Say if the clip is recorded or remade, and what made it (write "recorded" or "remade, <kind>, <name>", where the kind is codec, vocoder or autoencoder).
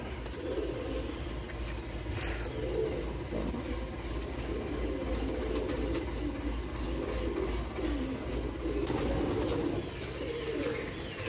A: recorded